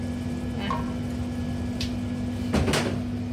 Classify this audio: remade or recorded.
recorded